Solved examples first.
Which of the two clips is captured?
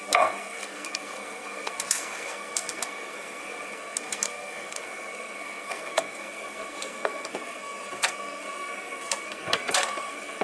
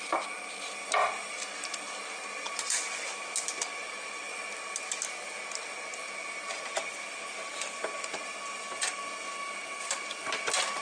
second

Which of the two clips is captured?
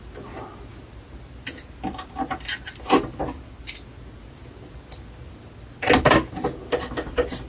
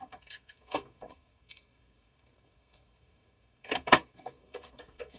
first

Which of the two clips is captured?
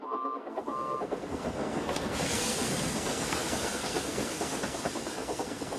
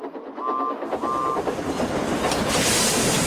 second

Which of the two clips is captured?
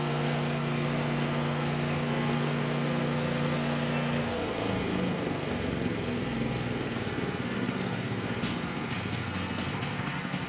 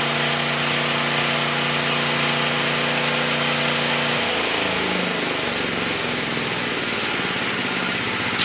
second